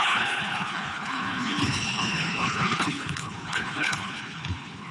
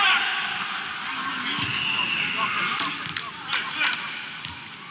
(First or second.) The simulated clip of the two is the first